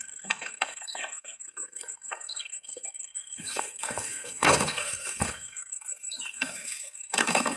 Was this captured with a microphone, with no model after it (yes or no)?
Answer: no